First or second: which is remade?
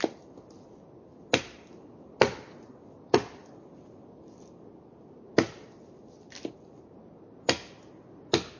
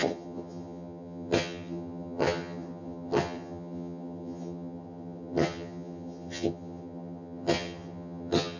second